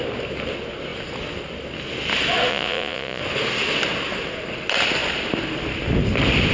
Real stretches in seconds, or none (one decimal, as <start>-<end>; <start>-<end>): 0.0-2.5; 3.2-6.5